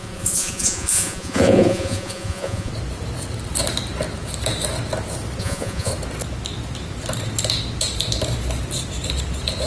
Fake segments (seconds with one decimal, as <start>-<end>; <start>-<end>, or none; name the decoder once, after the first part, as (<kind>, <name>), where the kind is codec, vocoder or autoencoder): 0.0-2.7 (vocoder, Vocos); 5.4-5.9